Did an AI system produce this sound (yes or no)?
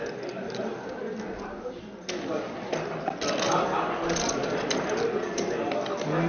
no